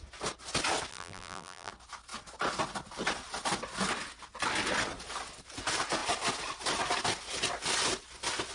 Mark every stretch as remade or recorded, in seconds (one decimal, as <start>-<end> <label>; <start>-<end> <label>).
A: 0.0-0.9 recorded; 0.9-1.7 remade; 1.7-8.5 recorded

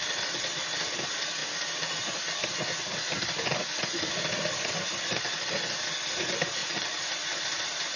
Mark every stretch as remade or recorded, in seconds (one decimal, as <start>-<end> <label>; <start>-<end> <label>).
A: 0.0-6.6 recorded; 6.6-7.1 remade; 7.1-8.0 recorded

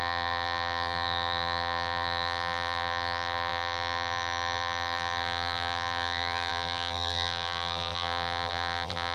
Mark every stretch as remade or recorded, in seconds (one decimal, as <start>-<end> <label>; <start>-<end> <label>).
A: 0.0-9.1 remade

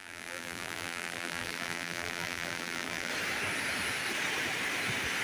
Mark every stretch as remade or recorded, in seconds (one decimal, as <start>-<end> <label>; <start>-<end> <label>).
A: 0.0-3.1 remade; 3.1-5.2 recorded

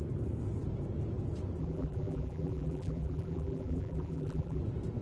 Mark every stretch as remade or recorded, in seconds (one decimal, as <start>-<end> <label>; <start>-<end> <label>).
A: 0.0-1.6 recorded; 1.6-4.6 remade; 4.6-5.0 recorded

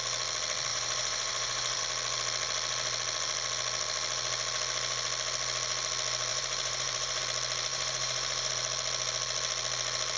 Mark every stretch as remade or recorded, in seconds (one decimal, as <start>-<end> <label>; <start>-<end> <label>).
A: 0.0-0.7 recorded; 0.7-1.8 remade; 1.8-6.3 recorded; 6.3-7.2 remade; 7.2-7.7 recorded; 7.7-8.5 remade; 8.5-10.2 recorded

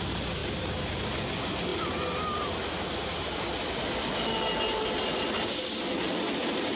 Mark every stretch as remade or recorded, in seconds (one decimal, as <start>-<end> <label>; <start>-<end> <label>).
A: 0.0-0.4 recorded; 0.4-1.0 remade; 1.0-6.8 recorded